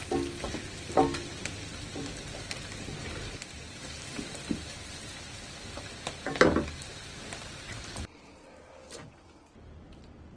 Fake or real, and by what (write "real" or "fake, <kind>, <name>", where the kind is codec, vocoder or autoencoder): fake, vocoder, BigVGAN v2